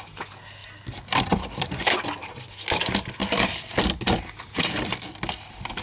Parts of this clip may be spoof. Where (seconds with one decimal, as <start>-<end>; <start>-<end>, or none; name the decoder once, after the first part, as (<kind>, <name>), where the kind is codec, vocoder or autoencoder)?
0.6-1.8 (vocoder, BigVGAN v2); 3.2-5.8